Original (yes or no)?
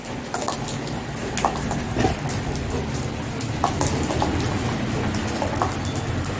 yes